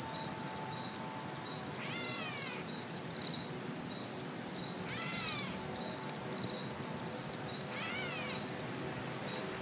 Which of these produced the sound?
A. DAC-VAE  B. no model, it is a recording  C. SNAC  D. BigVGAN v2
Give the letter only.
B